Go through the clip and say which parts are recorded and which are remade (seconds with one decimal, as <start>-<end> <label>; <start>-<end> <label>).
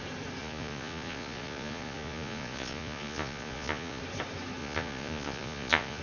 0.0-0.4 recorded; 0.4-4.0 remade; 4.0-4.6 recorded; 4.6-6.0 remade